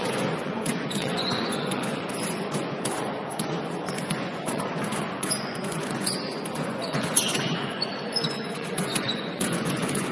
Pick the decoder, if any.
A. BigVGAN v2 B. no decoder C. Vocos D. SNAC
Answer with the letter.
C